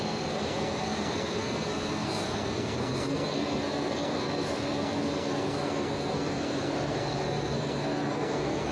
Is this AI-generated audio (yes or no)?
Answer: yes